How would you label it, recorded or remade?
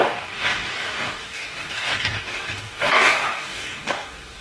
remade